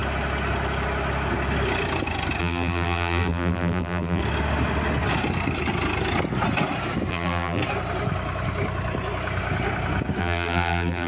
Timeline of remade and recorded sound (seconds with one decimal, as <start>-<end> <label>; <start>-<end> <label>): 0.0-2.4 recorded; 2.4-4.2 remade; 4.2-7.1 recorded; 7.1-7.6 remade; 7.6-10.2 recorded; 10.2-11.1 remade